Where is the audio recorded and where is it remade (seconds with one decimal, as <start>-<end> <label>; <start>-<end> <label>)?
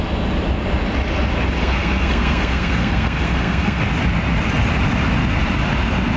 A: 0.0-1.6 recorded; 1.6-3.8 remade; 3.8-6.2 recorded